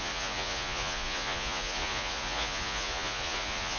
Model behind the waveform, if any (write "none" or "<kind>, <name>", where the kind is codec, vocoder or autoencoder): vocoder, Vocos